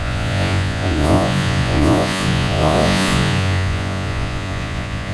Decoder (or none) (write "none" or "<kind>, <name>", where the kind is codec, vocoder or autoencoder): vocoder, Vocos